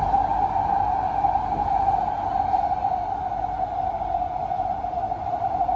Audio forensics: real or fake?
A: real